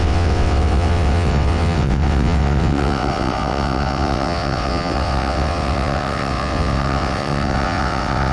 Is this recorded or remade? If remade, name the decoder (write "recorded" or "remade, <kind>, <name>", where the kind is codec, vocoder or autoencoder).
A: remade, vocoder, WaveNeXt